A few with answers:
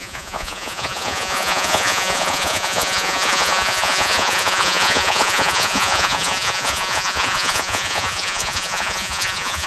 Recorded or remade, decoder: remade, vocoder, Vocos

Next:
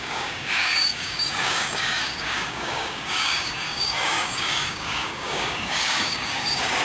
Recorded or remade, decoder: remade, codec, DAC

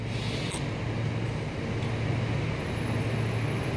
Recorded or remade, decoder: recorded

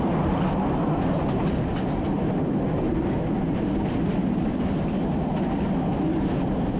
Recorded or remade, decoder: recorded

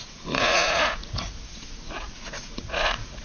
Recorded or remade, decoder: remade, vocoder, Vocos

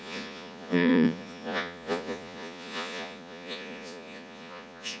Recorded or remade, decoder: remade, vocoder, Vocos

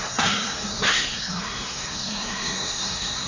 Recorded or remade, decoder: remade, codec, SNAC